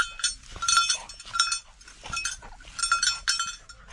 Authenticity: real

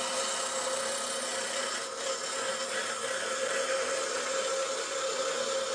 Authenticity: real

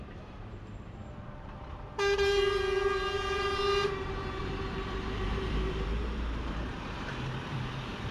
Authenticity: fake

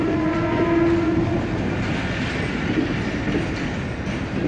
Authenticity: real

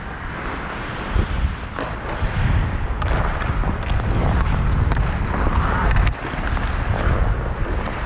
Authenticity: real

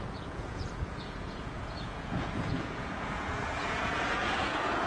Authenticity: fake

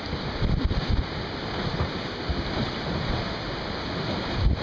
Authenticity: real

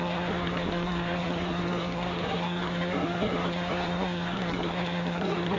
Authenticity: fake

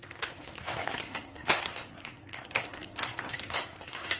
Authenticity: fake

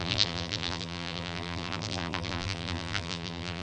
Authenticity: fake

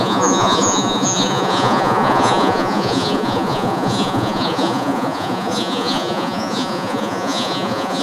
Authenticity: fake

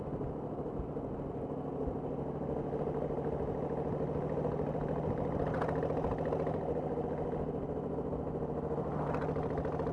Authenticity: real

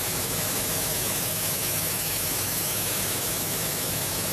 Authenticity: fake